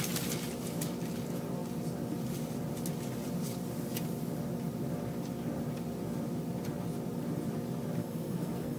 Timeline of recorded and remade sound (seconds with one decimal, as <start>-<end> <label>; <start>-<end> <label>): 0.0-8.0 recorded; 8.0-8.8 remade